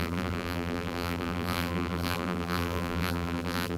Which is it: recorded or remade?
remade